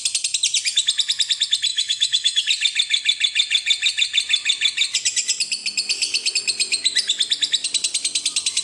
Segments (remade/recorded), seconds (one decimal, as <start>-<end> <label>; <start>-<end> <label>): 0.0-1.7 recorded; 1.7-2.4 remade; 2.4-8.6 recorded